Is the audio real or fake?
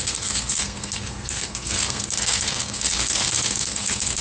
fake